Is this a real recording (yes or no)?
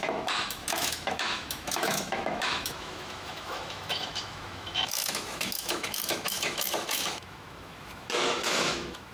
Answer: no